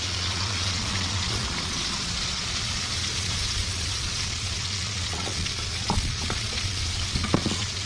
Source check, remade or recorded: remade